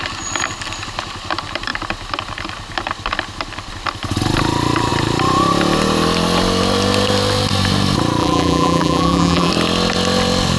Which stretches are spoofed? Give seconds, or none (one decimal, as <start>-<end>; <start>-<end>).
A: 8.2-9.5